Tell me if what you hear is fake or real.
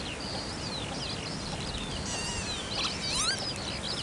real